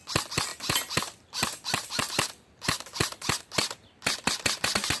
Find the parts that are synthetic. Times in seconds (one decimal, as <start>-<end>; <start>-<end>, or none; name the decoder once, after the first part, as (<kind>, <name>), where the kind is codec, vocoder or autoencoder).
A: 0.5-3.4 (vocoder, BigVGAN v2)